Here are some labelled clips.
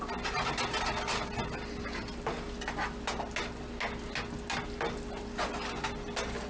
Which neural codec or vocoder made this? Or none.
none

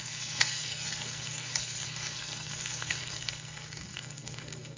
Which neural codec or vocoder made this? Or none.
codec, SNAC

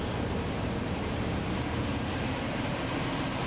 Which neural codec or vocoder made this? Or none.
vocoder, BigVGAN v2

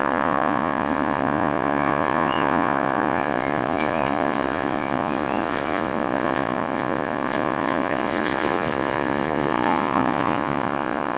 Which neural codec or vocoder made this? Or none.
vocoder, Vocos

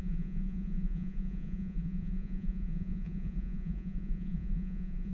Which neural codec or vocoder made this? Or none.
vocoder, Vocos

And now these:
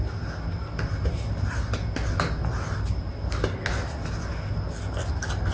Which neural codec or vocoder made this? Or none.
none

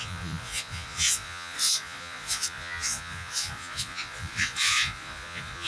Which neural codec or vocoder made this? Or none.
vocoder, Vocos